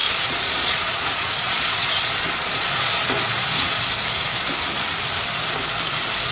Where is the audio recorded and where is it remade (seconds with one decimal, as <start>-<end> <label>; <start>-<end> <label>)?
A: 0.0-3.8 remade; 3.8-6.3 recorded